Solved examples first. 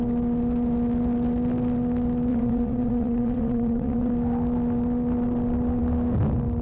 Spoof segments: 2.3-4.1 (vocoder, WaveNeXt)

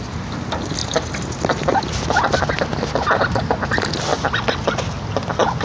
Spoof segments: none

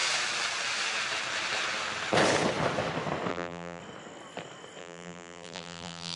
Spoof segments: 3.3-3.8 (vocoder, BigVGAN v2); 4.8-6.2

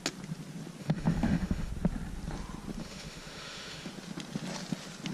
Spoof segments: 0.8-1.7 (autoencoder, DAC-VAE); 2.8-3.9

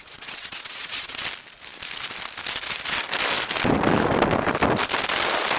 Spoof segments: 0.0-1.2 (vocoder, WaveNeXt)

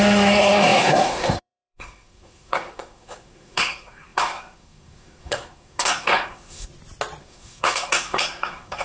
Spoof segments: 0.0-6.7 (codec, SNAC); 7.2-8.8

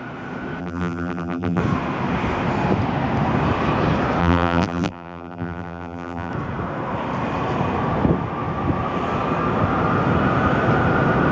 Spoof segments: 0.6-1.6 (vocoder, BigVGAN v2); 4.2-6.3